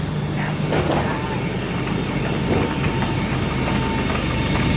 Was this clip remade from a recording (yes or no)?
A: no